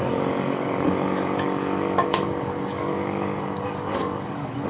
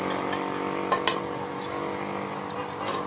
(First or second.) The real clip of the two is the second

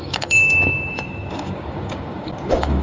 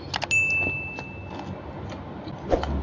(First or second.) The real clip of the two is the second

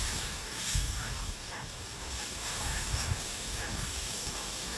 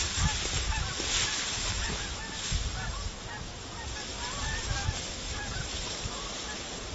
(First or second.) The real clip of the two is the second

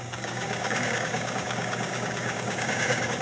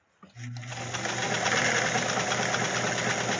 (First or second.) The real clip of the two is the second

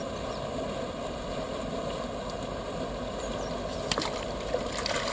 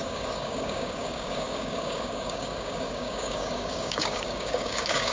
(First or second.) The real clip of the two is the first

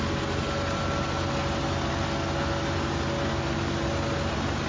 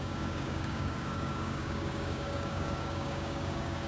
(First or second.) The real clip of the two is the first